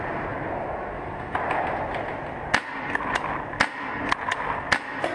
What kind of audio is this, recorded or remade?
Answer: recorded